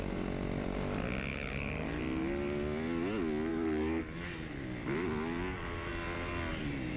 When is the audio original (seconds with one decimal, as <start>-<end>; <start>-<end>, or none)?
0.0-1.3; 2.0-3.5; 4.0-7.0

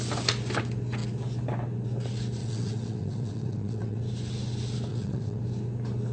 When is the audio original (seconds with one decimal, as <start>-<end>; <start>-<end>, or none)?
0.0-2.4; 4.0-4.9; 5.4-6.1

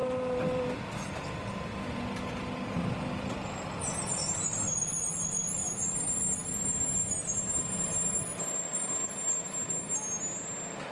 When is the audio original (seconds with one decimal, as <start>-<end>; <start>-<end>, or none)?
0.6-5.6; 9.7-10.9

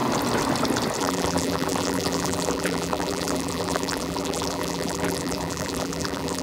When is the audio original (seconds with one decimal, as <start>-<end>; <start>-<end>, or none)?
0.0-1.0

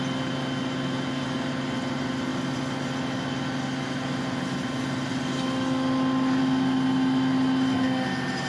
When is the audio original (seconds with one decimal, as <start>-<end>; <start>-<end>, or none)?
0.0-8.5

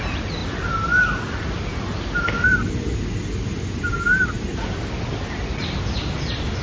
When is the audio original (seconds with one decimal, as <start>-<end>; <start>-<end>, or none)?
0.0-6.6